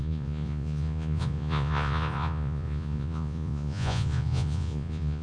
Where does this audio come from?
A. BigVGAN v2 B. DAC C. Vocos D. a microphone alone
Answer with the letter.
C